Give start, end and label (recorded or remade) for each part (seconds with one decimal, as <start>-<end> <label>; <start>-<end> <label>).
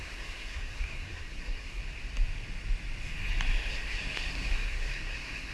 0.0-1.8 remade; 1.8-3.7 recorded; 3.7-5.5 remade